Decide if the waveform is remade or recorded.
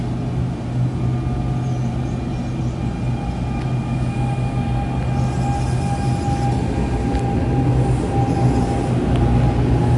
recorded